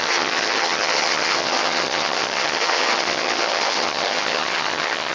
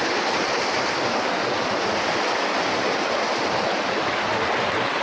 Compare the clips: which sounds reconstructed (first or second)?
first